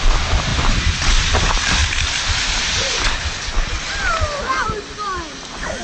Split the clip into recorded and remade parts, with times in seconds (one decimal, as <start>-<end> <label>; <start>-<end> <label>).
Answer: 0.0-0.5 remade; 0.5-1.3 recorded; 1.3-5.8 remade